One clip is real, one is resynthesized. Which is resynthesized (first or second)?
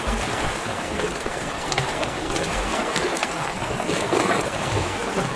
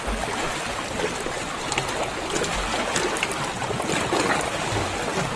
first